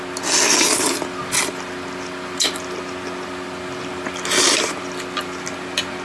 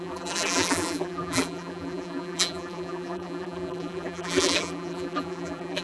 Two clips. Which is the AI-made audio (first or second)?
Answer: second